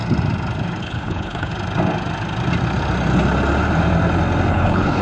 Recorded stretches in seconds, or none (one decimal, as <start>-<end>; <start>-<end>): 0.0-0.8; 1.5-4.5